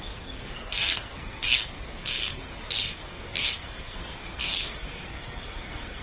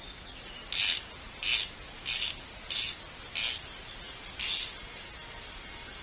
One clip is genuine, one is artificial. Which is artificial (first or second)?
first